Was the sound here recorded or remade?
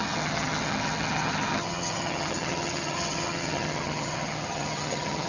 remade